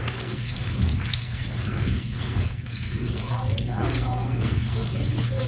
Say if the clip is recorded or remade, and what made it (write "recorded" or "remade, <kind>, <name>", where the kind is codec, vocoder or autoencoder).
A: remade, codec, SNAC